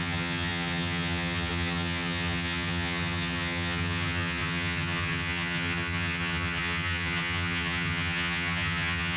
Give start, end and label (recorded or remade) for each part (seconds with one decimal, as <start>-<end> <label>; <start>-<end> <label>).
0.0-9.2 remade